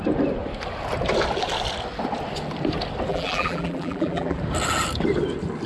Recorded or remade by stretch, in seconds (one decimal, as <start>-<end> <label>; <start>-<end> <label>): 0.0-3.1 recorded; 3.1-4.4 remade; 4.4-5.7 recorded

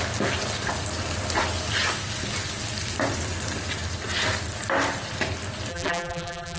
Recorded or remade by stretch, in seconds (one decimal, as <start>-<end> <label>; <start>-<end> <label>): 0.0-5.7 recorded; 5.7-6.6 remade

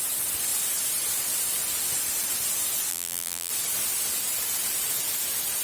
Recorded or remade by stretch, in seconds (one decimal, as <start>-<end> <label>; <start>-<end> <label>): 0.0-2.9 recorded; 2.9-3.5 remade; 3.5-5.6 recorded